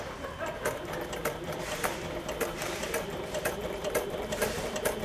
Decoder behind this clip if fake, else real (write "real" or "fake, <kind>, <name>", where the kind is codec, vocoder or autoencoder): fake, vocoder, BigVGAN v2